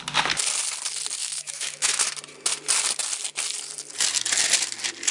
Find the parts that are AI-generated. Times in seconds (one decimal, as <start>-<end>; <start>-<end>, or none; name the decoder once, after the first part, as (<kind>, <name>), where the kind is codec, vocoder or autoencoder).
1.2-2.0 (autoencoder, DAC-VAE)